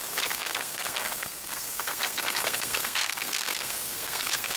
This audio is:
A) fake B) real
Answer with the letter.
A